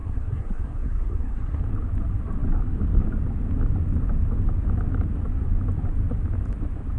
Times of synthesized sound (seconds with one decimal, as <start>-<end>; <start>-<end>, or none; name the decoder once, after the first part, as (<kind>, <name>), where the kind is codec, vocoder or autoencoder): 0.0-1.6 (codec, SNAC)